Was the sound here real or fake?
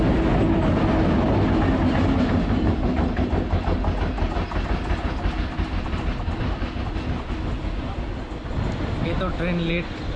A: real